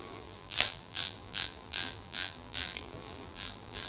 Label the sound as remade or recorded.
remade